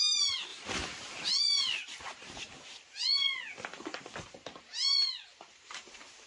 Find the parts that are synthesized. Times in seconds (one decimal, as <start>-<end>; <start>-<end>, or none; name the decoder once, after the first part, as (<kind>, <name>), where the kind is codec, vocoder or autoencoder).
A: none